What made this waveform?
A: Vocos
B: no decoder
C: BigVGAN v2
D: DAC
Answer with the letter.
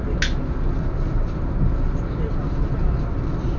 B